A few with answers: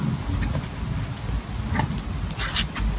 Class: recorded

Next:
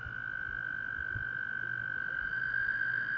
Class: recorded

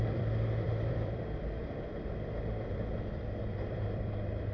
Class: remade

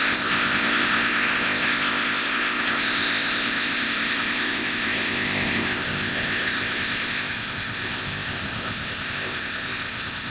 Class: remade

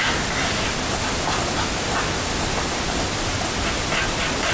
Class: recorded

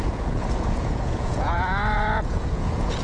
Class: remade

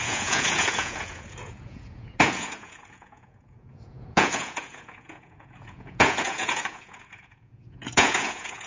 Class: remade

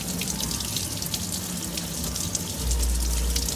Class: recorded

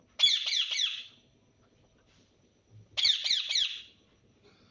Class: recorded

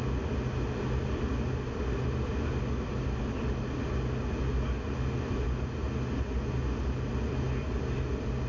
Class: recorded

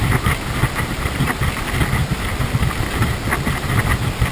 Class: recorded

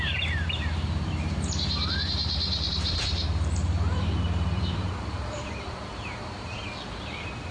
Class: remade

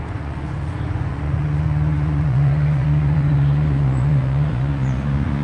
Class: remade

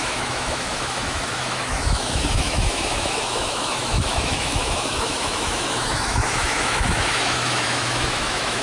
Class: remade